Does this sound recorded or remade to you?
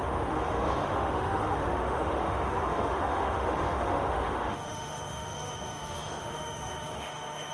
remade